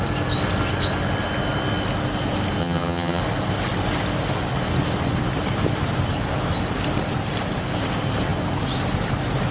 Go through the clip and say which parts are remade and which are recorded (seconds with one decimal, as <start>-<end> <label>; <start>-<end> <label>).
0.0-2.6 recorded; 2.6-3.2 remade; 3.2-9.5 recorded